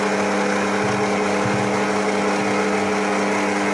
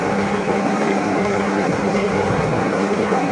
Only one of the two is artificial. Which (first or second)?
second